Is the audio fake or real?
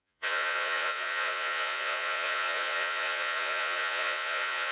fake